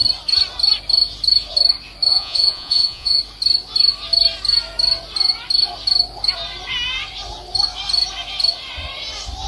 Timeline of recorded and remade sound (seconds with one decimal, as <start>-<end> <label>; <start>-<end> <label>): 0.0-2.1 recorded; 2.1-3.2 remade; 3.2-9.5 recorded